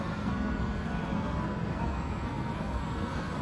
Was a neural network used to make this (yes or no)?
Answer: yes